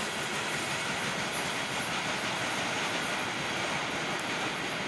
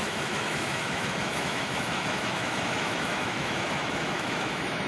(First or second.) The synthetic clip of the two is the second